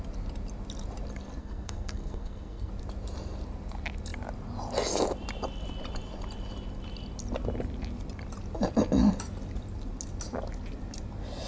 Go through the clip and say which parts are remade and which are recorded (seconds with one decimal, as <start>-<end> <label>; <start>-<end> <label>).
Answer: 0.0-1.4 recorded; 1.4-2.7 remade; 2.7-11.5 recorded